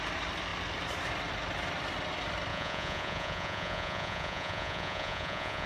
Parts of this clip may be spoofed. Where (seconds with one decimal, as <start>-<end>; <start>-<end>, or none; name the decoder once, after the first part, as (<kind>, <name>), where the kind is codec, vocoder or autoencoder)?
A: 2.5-5.7 (vocoder, Vocos)